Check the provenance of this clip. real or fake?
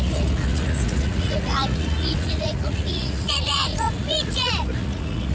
fake